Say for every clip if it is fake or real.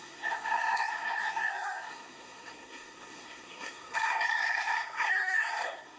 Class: fake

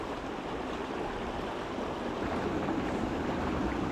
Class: real